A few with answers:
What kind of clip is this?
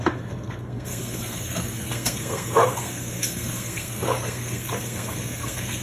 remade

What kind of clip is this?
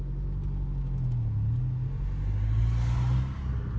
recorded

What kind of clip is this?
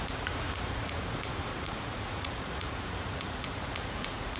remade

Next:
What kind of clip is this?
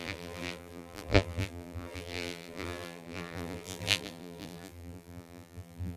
remade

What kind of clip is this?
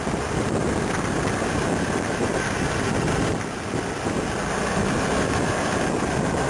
recorded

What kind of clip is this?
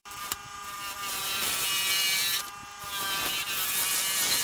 recorded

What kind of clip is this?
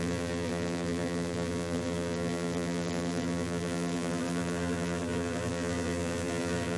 remade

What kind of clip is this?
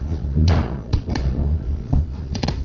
remade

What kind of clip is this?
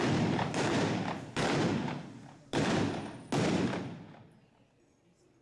recorded